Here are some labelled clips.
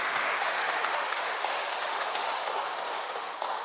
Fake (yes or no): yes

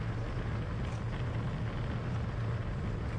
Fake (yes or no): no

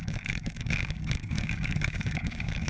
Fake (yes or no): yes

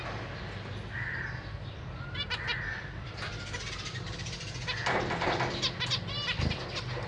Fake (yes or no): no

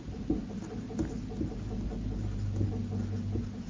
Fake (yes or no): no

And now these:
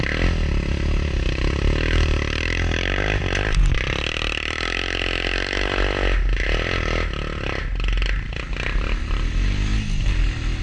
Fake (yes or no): no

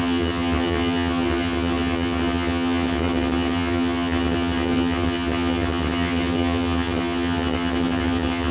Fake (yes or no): yes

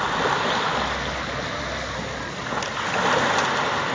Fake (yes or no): no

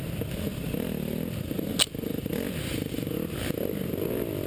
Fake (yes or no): no